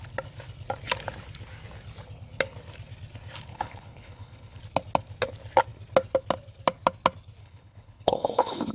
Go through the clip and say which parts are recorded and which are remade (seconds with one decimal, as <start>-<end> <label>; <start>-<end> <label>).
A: 0.0-3.5 recorded; 3.5-4.6 remade; 4.6-7.4 recorded; 7.4-8.7 remade